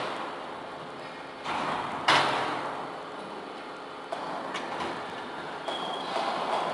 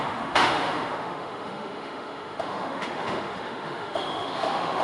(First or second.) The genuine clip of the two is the first